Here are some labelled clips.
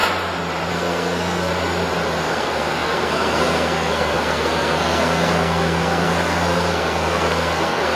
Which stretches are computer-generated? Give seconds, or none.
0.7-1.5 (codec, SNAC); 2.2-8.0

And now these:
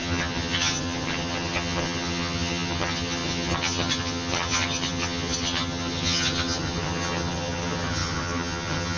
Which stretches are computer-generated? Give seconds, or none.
0.0-9.0 (vocoder, HiFi-GAN)

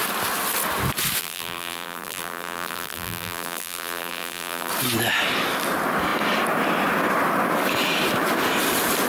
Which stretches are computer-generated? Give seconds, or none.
1.2-4.7 (vocoder, BigVGAN v2)

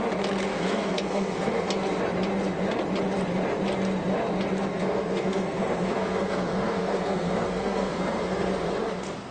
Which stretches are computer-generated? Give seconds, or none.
0.5-1.7 (codec, SNAC); 4.7-8.5

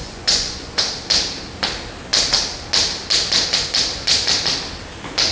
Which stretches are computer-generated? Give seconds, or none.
0.0-0.8 (vocoder, Vocos)

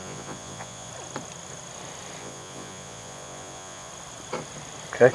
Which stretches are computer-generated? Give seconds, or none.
0.0-0.9 (vocoder, Vocos); 2.2-3.9

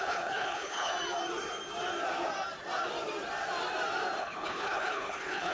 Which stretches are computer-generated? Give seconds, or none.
0.0-0.9 (codec, HILCodec); 4.2-5.5

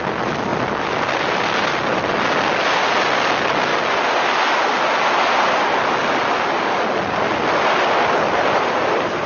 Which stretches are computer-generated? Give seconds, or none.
none